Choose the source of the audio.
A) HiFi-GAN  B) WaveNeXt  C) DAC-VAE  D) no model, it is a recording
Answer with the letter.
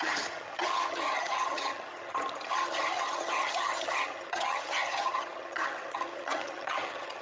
A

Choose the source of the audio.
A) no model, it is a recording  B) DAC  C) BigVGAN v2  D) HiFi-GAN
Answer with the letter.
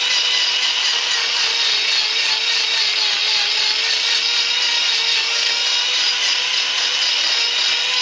A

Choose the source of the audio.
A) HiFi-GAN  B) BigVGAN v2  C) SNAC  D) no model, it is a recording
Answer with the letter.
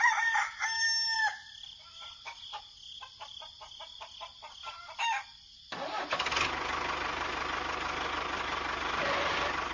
D